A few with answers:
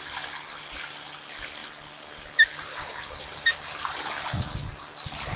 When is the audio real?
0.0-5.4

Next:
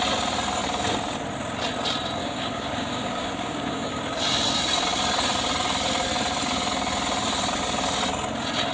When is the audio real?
0.0-2.2; 4.0-8.7

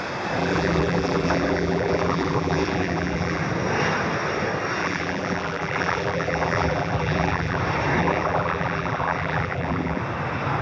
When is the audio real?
0.0-0.4; 3.4-4.8; 7.6-8.0; 10.0-10.6

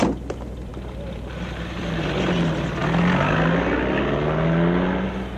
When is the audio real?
0.0-0.7; 1.8-5.4